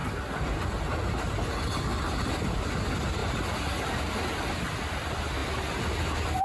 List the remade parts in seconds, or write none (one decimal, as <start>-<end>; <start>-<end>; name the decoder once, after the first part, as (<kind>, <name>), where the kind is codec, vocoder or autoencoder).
none